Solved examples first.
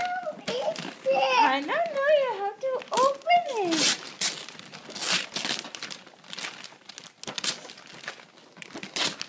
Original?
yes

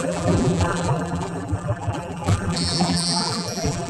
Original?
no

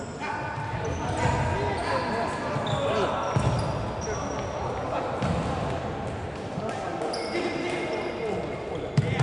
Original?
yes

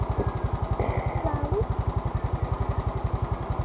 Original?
yes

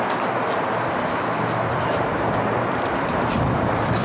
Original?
no